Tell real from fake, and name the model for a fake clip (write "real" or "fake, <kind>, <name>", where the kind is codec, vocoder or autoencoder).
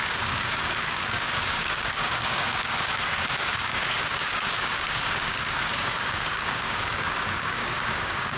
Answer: fake, codec, DAC